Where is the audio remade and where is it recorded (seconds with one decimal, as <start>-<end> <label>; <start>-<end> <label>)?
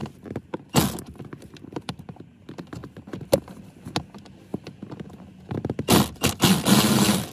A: 0.0-7.3 recorded